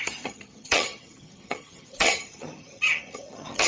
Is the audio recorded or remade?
remade